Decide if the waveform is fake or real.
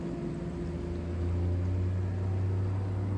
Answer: real